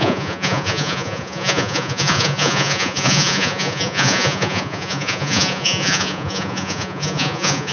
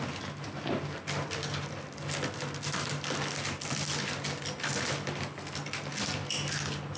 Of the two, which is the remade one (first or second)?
first